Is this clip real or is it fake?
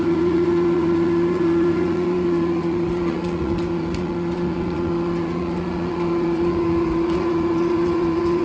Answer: fake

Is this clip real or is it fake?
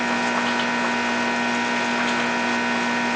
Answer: real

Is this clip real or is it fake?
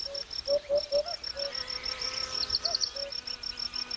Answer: real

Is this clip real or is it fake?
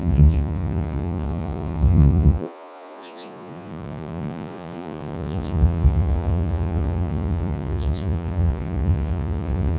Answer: fake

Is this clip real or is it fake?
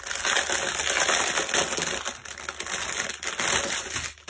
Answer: real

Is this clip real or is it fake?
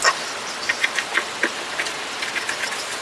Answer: real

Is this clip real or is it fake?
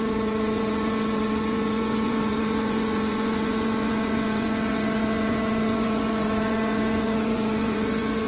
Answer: fake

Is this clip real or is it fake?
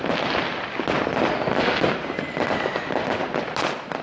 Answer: real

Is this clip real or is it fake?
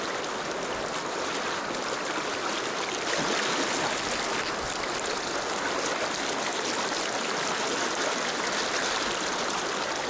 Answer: real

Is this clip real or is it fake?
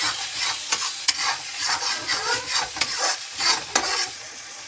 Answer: fake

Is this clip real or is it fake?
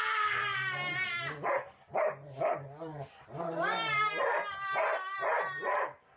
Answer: real